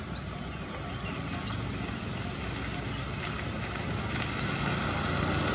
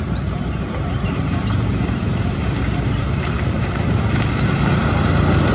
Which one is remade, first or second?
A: second